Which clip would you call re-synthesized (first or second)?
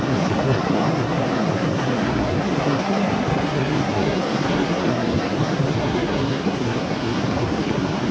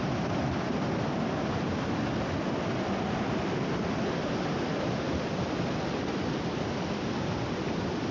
first